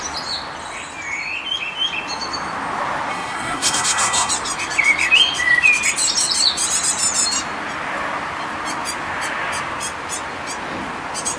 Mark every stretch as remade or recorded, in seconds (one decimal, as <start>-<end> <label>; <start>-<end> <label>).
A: 0.0-3.1 recorded; 3.1-4.3 remade; 4.3-11.4 recorded